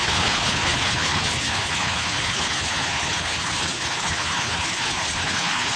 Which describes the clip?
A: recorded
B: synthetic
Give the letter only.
B